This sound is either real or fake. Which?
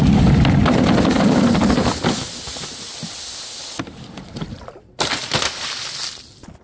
real